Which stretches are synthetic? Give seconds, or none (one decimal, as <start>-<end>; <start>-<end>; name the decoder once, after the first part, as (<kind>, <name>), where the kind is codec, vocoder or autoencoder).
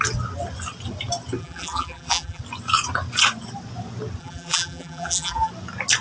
1.4-2.4 (vocoder, BigVGAN v2); 4.2-5.5